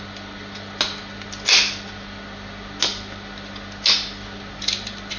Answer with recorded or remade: recorded